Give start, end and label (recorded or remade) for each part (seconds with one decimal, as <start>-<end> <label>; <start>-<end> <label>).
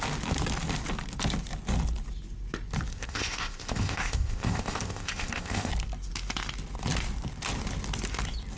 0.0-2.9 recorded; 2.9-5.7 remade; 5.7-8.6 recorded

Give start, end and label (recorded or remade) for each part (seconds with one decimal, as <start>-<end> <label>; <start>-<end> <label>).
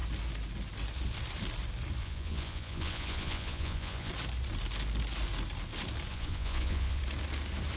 0.0-2.0 recorded; 2.0-4.1 remade; 4.1-6.1 recorded; 6.1-7.0 remade; 7.0-7.8 recorded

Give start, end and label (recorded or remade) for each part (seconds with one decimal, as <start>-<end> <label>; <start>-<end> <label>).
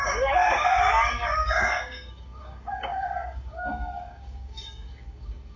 0.0-5.6 remade